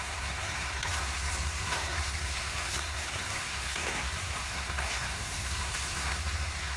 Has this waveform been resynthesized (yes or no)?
yes